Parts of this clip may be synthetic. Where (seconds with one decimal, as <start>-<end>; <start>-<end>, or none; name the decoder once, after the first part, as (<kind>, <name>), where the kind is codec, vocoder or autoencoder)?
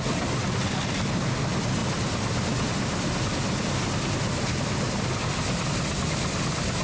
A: none